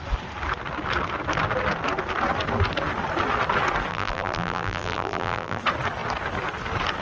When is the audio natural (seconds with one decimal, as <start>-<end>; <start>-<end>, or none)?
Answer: 0.0-3.9; 5.6-7.0